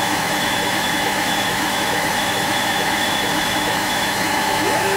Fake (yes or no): yes